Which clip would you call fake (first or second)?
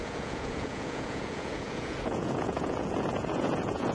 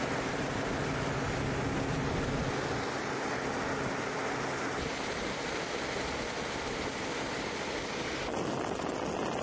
first